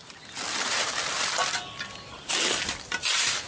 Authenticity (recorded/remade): recorded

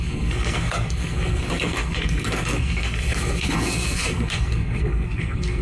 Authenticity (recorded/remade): remade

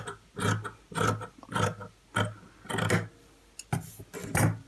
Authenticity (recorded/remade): recorded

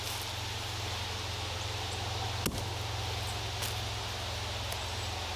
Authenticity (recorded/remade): recorded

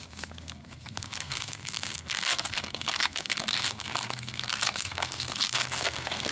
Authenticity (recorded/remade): remade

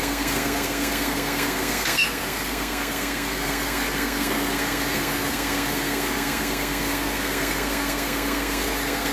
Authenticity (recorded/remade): remade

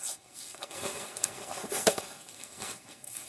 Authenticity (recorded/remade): remade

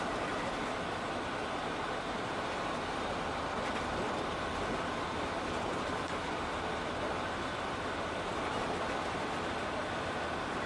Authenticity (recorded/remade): recorded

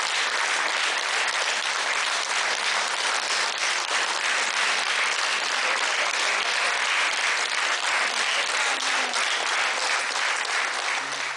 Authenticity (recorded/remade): recorded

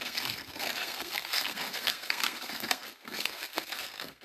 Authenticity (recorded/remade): remade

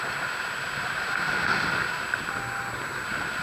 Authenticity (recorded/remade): recorded